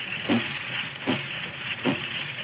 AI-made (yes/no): yes